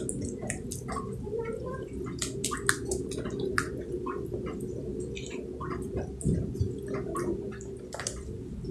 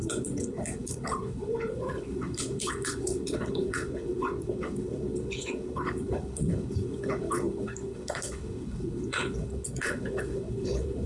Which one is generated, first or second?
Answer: second